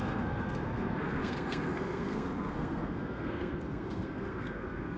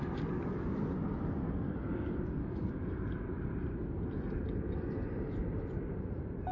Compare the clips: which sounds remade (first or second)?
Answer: first